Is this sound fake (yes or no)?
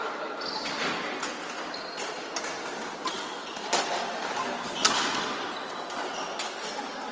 no